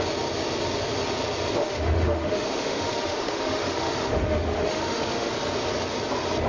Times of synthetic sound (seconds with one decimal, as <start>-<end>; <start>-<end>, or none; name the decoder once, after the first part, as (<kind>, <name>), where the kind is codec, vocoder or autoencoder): 1.6-5.3 (autoencoder, DAC-VAE)